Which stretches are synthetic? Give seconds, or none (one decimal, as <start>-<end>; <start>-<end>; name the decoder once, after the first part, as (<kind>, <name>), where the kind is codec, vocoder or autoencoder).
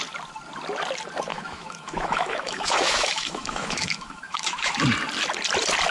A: 1.3-4.8 (autoencoder, DAC-VAE)